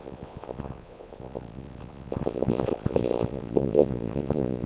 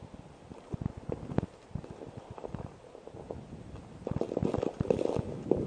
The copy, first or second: first